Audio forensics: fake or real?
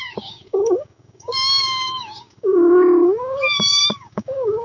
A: fake